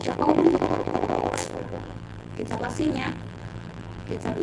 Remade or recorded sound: remade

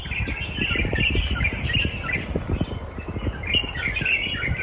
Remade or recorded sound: recorded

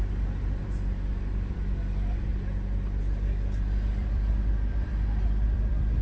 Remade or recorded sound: remade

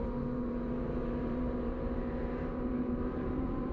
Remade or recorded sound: remade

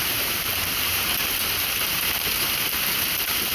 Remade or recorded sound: remade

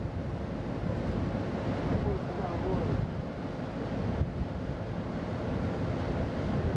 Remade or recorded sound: recorded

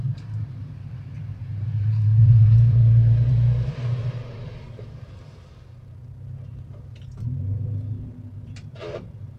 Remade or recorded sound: remade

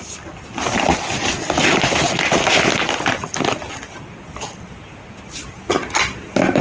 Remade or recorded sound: recorded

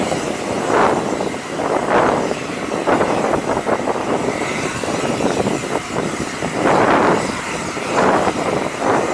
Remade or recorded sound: remade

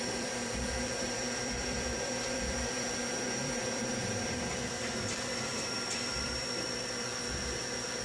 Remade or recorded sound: remade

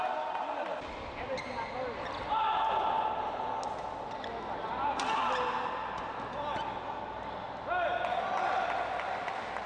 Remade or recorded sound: recorded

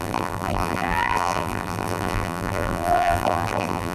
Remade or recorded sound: remade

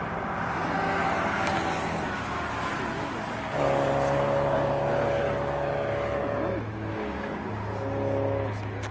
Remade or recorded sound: recorded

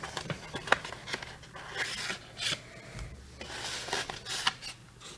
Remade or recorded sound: recorded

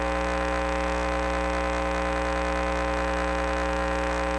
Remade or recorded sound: recorded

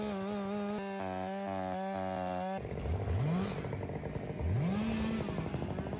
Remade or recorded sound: recorded